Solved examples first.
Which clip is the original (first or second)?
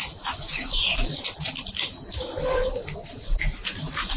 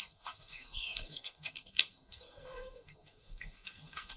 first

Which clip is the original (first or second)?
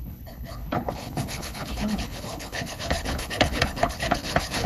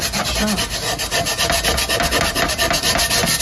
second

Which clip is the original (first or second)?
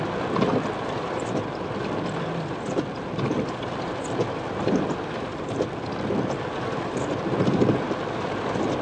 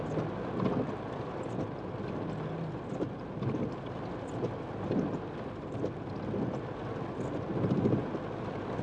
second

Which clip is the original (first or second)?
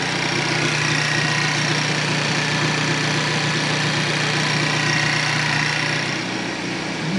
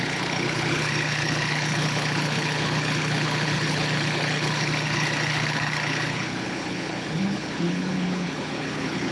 first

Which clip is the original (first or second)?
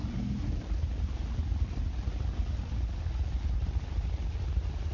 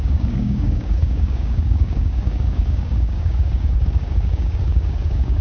first